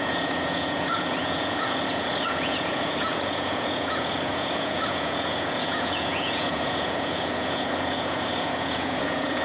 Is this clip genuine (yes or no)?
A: no